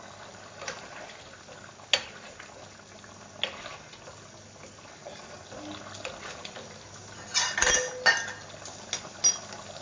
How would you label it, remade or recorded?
recorded